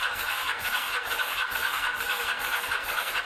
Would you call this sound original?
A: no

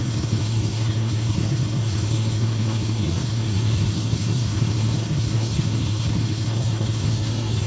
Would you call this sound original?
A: no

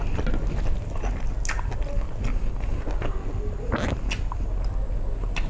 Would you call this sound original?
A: yes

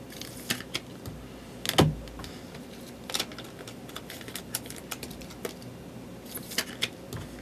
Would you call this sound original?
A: yes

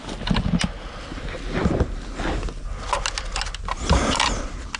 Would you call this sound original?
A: yes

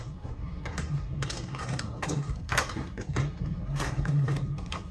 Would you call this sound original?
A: no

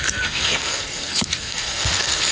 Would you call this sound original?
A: no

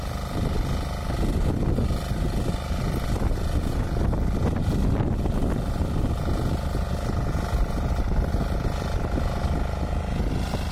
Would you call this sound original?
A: yes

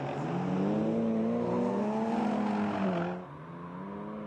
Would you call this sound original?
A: yes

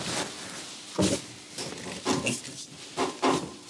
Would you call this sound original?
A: yes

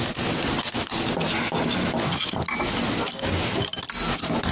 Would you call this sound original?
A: yes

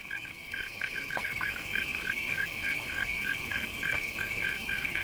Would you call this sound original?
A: no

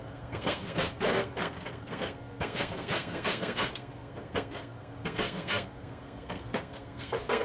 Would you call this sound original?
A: no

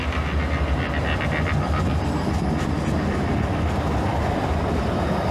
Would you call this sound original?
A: yes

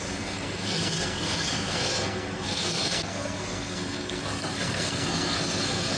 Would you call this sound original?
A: no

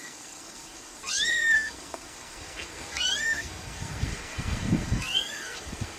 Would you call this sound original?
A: no